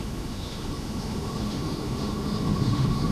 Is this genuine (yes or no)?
no